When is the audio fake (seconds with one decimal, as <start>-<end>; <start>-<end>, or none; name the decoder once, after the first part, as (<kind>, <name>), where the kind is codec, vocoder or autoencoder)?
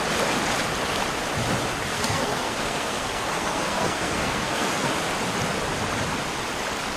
1.9-4.9 (codec, SNAC)